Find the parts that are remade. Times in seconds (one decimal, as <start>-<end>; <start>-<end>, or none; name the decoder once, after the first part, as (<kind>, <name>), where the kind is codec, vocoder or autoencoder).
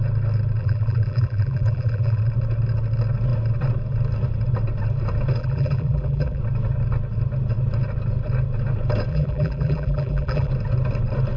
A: 0.6-2.2 (vocoder, BigVGAN v2); 5.4-6.4; 9.1-10.5